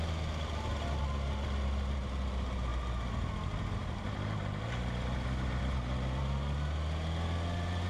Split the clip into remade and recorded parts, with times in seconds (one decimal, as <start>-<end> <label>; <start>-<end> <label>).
0.0-7.9 recorded